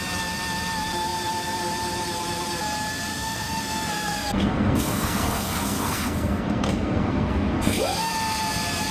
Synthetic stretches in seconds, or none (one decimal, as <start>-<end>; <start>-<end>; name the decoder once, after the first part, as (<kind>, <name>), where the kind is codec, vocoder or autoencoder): 3.1-8.1 (codec, SNAC)